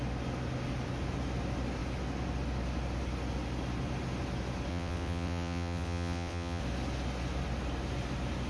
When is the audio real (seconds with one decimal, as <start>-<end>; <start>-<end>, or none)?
0.0-4.7; 6.6-8.5